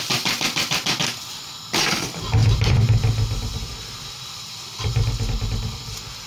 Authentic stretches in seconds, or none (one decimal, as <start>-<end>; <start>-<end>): 0.0-2.4; 3.0-3.5